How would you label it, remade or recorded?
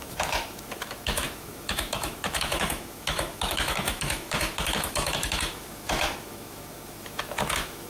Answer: remade